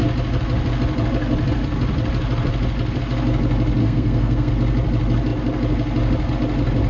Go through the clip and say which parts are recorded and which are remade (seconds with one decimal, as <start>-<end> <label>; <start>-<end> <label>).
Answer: 0.0-3.8 recorded; 3.8-4.5 remade; 4.5-6.9 recorded